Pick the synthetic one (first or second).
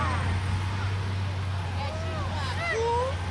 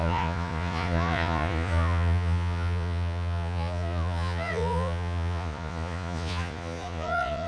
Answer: second